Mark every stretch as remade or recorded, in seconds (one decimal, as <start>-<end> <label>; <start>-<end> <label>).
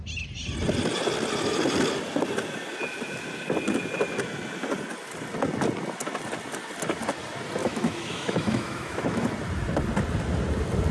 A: 0.0-7.6 recorded; 7.6-9.3 remade; 9.3-10.9 recorded